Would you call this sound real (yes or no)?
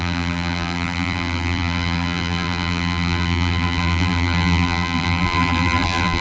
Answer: no